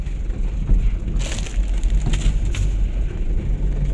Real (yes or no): yes